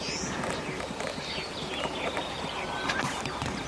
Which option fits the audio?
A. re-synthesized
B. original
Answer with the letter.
B